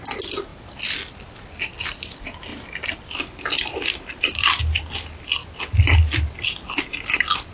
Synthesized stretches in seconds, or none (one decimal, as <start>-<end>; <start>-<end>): 2.5-4.6